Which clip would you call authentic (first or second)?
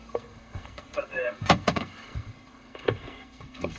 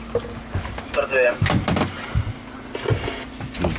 second